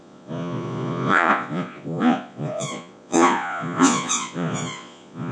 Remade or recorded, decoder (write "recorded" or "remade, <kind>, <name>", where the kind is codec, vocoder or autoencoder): remade, vocoder, Vocos